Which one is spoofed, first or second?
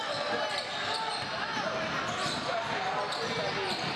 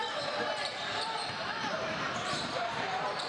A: second